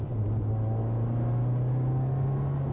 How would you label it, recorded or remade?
recorded